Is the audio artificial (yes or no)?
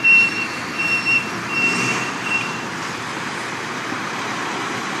yes